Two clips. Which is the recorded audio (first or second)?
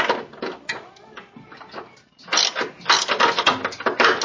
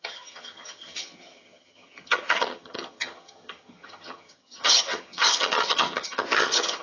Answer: first